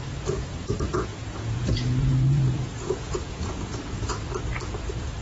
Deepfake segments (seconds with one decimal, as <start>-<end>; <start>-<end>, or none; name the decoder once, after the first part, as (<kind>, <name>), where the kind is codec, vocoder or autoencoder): 0.9-3.8 (vocoder, Vocos)